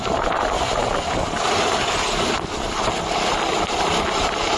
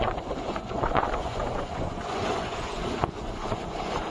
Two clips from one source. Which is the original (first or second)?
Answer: first